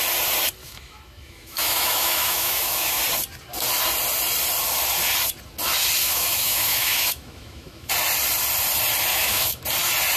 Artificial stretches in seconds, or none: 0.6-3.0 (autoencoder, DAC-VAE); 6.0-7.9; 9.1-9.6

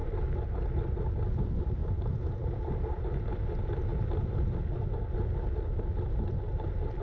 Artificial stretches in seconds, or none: 1.8-2.7 (vocoder, BigVGAN v2); 3.9-4.6

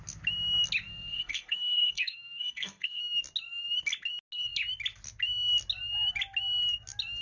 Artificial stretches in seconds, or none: 0.9-3.0 (codec, SNAC)